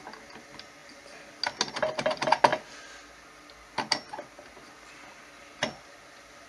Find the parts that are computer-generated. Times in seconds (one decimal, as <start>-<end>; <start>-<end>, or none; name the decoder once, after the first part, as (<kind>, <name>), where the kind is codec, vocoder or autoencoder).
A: none